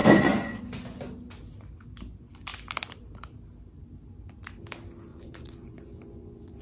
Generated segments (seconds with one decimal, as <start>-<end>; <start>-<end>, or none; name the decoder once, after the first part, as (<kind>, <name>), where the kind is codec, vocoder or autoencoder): 0.0-0.6 (vocoder, Vocos); 5.1-6.6